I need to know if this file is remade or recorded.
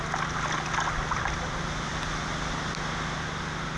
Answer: recorded